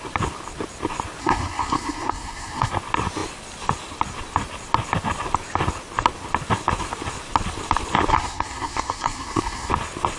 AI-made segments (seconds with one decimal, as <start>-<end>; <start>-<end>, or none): 1.2-2.7; 8.1-9.7